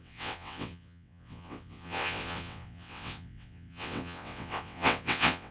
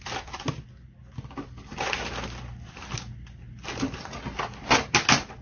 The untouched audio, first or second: second